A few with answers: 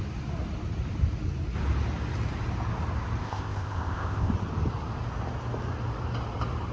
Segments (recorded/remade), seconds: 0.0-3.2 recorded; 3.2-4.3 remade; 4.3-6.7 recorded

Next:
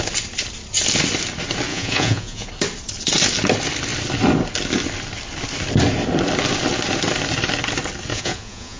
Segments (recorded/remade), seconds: 0.0-1.7 recorded; 1.7-2.5 remade; 2.5-8.1 recorded; 8.1-8.8 remade

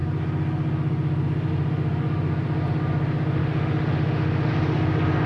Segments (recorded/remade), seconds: 0.0-3.4 recorded; 3.4-4.5 remade; 4.5-5.3 recorded

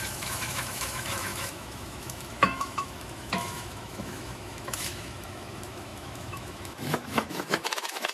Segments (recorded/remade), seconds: 0.0-8.1 remade

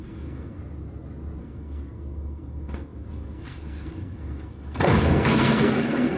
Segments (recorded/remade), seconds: 0.0-0.6 remade; 0.6-1.4 recorded; 1.4-6.2 remade

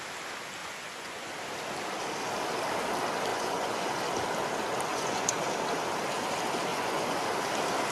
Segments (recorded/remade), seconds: 0.0-0.6 recorded; 0.6-1.3 remade; 1.3-3.3 recorded; 3.3-4.0 remade; 4.0-4.9 recorded; 4.9-5.4 remade; 5.4-6.7 recorded; 6.7-7.2 remade; 7.2-7.9 recorded